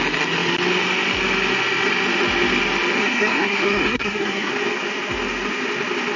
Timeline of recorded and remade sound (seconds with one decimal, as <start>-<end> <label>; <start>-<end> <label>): 0.0-3.0 recorded; 3.0-4.5 remade; 4.5-6.2 recorded